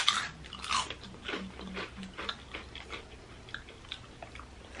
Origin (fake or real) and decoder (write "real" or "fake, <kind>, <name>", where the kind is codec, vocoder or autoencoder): fake, vocoder, BigVGAN v2